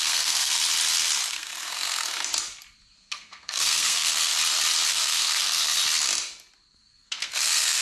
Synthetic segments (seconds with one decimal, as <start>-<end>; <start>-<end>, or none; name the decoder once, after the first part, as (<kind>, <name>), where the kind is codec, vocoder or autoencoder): 0.0-0.6 (codec, SNAC); 1.3-2.3; 3.0-4.3; 4.9-5.8; 6.9-7.8